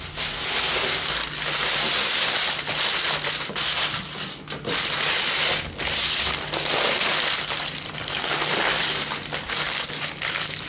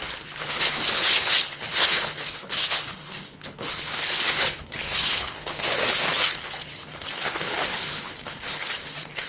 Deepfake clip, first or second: second